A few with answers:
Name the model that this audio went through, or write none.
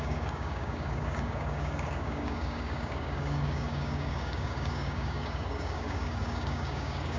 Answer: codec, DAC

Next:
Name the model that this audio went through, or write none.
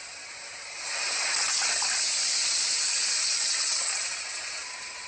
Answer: none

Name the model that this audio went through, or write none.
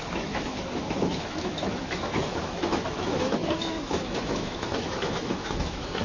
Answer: autoencoder, DAC-VAE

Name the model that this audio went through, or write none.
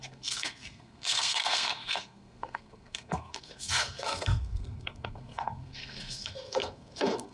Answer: codec, SNAC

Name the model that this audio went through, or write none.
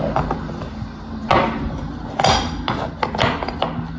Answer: none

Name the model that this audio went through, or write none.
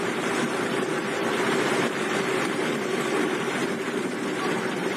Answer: vocoder, BigVGAN v2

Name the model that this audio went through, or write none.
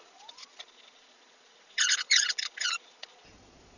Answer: vocoder, Vocos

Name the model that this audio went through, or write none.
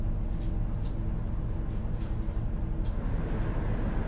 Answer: none